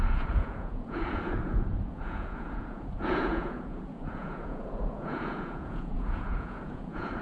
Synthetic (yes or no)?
yes